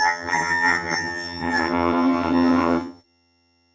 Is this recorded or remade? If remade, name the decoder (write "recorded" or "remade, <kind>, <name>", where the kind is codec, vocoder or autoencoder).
remade, vocoder, HiFi-GAN